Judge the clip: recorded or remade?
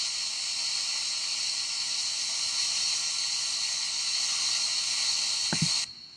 recorded